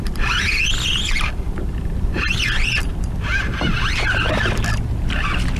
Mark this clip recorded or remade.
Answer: recorded